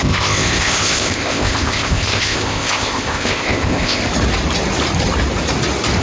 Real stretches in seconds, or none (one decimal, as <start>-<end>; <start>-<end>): 4.0-6.0